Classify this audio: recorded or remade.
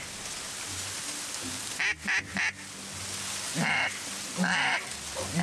recorded